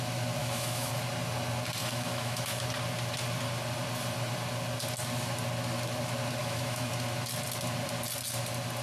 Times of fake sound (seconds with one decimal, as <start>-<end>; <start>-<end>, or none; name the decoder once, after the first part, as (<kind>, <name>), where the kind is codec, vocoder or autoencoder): 0.4-0.9 (autoencoder, DAC-VAE); 1.8-2.6; 6.4-6.9

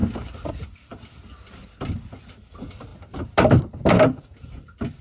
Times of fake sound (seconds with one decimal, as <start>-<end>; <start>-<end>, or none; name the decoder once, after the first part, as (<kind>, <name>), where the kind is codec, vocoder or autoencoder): none

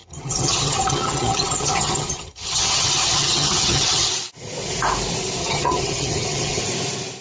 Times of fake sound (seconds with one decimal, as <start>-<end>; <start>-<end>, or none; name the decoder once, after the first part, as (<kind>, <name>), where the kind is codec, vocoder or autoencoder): 0.0-4.1 (vocoder, HiFi-GAN); 5.4-6.6

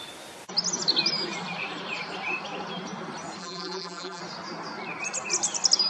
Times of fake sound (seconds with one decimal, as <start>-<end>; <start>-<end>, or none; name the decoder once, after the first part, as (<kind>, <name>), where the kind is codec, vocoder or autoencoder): 3.4-4.2 (vocoder, BigVGAN v2)